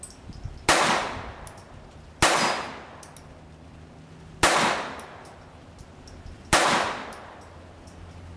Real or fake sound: real